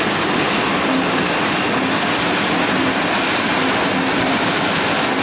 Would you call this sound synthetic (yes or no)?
no